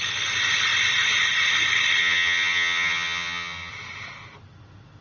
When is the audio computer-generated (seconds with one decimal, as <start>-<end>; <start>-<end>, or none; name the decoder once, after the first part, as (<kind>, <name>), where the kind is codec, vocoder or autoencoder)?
2.0-3.7 (vocoder, HiFi-GAN)